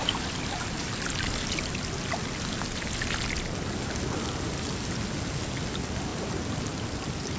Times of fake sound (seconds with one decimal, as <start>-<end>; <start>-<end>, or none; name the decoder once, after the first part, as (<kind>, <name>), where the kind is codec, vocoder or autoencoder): none